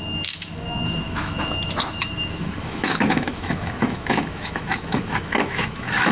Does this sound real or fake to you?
fake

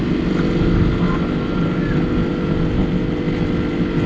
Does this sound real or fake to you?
real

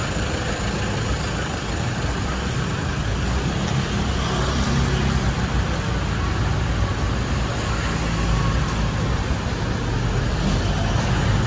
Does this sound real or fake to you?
real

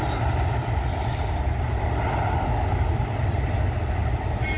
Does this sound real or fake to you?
real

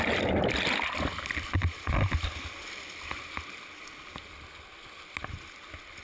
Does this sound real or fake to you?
real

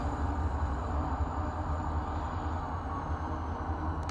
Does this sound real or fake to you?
real